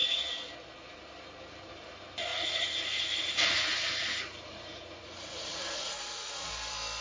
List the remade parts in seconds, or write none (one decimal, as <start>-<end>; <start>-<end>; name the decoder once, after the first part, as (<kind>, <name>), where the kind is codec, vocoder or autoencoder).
2.3-6.5 (vocoder, Vocos)